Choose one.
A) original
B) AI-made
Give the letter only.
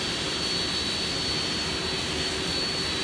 A